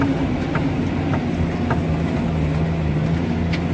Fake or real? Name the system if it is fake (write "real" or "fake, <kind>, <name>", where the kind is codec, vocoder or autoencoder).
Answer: real